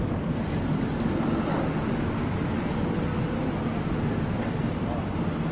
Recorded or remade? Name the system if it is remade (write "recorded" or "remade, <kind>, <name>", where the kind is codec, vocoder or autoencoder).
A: recorded